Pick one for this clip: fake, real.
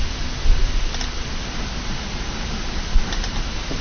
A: real